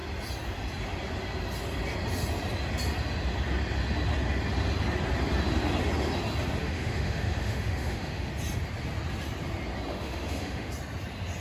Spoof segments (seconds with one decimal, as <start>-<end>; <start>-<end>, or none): 6.6-8.3; 9.9-10.7